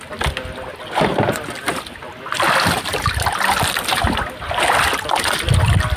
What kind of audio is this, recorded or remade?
recorded